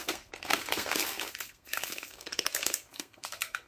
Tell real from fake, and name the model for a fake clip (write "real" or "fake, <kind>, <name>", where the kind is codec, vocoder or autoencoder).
fake, codec, SNAC